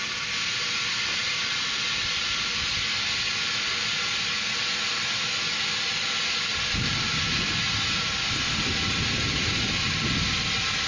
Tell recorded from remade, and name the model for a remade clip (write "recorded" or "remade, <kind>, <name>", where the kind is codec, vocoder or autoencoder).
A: recorded